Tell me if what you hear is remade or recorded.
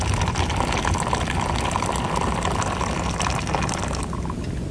recorded